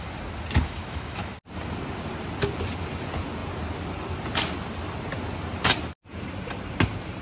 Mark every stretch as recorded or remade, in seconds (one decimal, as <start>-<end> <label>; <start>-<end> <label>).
0.0-0.6 recorded; 0.6-1.3 remade; 1.3-7.2 recorded